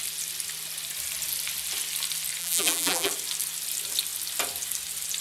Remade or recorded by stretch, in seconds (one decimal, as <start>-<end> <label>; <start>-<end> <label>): 0.0-2.4 recorded; 2.4-3.1 remade; 3.1-5.2 recorded